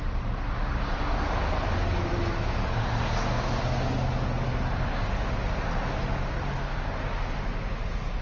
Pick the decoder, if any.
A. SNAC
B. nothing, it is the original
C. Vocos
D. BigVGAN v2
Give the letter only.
B